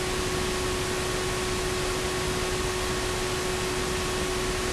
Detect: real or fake real